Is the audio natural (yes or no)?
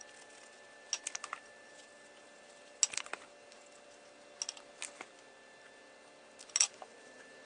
yes